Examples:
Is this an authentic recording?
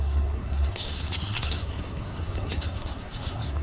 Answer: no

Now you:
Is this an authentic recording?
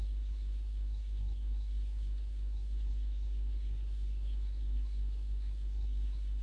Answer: no